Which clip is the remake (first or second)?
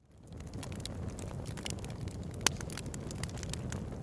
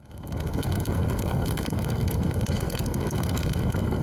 second